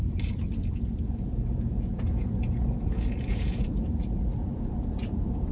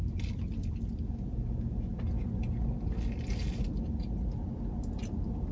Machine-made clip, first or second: first